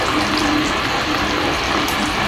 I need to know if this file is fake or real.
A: fake